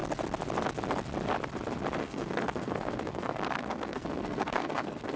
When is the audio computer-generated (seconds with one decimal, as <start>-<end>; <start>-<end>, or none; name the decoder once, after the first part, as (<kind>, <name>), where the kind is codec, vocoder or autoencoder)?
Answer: 2.0-5.2 (codec, SNAC)